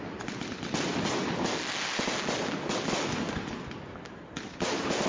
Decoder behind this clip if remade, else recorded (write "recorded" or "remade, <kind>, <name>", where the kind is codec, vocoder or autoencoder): recorded